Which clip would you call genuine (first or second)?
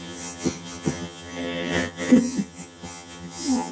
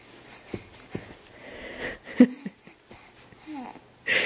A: second